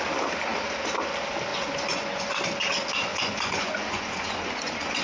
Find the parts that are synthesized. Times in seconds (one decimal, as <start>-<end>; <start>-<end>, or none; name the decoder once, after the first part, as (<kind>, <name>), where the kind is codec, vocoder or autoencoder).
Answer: 1.5-2.4 (vocoder, Vocos); 3.1-5.0